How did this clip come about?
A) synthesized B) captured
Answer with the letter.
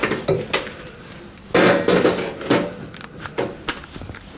B